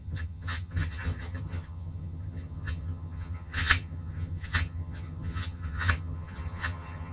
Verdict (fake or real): fake